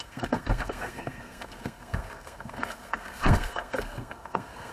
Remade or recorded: remade